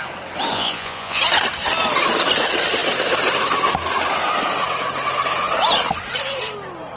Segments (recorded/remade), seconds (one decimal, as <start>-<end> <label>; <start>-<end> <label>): 0.0-0.5 recorded; 0.5-1.2 remade; 1.2-7.0 recorded